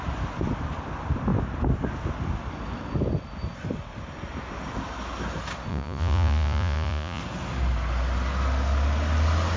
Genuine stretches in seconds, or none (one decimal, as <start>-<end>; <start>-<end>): 0.0-5.7; 7.2-9.6